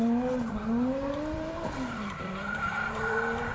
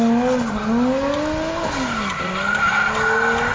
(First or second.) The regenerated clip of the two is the first